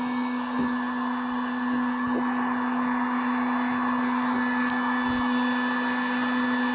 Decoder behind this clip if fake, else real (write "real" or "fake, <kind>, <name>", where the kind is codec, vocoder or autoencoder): real